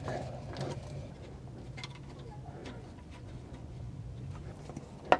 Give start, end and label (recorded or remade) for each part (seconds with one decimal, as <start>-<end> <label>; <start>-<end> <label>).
0.0-2.6 recorded; 2.6-4.0 remade; 4.0-5.2 recorded